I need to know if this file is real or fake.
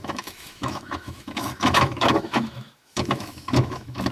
fake